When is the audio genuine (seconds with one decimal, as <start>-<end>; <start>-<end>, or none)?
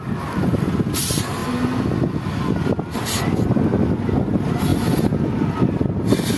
0.0-6.4